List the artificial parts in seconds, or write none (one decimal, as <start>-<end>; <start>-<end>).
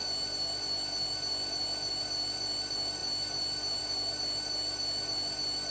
none